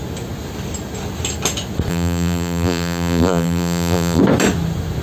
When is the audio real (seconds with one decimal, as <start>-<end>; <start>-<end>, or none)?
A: 0.0-1.9; 4.2-5.0

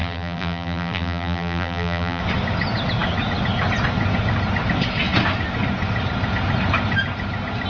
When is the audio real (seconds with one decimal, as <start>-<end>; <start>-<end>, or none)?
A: 2.2-7.7

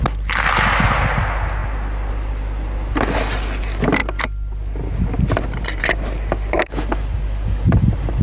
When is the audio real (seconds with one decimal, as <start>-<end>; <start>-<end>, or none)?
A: 0.0-8.2

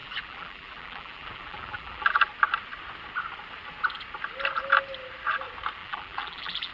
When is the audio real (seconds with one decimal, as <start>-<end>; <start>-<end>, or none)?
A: 2.3-5.8

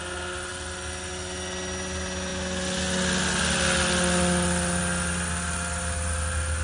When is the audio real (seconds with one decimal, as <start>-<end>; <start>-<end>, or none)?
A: 0.0-6.6

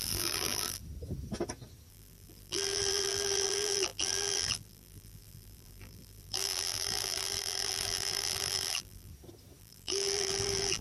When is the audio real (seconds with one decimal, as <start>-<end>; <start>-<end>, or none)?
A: 0.8-1.9; 9.1-9.6

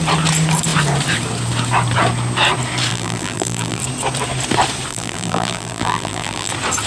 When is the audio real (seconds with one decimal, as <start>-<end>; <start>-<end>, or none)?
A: 0.0-2.9; 3.8-4.9; 6.5-6.9

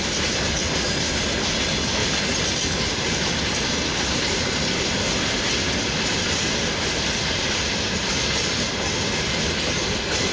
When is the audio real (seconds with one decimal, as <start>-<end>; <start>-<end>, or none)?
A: 0.0-10.3